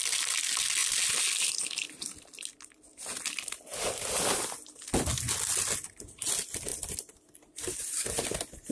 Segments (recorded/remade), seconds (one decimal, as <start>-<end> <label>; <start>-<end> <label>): 0.0-8.7 recorded